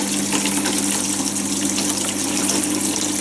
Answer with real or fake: real